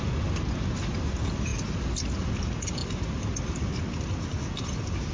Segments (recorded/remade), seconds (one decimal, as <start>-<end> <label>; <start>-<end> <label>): 0.0-5.1 recorded